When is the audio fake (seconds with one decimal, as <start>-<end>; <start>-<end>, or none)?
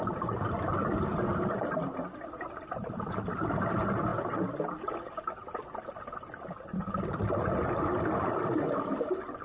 none